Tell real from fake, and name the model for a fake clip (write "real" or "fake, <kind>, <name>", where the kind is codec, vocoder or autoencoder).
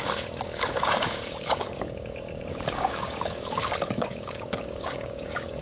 fake, codec, DAC